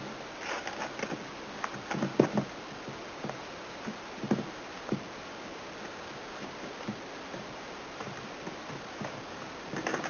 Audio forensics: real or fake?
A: real